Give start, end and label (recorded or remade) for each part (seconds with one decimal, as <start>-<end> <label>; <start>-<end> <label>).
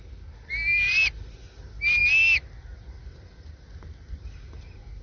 0.0-5.0 recorded